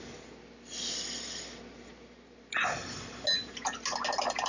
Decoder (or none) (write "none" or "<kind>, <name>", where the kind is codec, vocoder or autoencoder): none